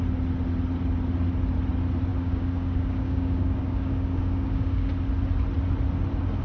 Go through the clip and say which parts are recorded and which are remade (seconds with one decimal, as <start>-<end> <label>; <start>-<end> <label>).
0.0-2.1 recorded; 2.1-4.9 remade; 4.9-6.4 recorded